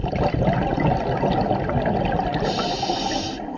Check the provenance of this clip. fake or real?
real